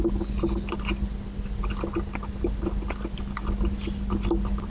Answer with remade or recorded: recorded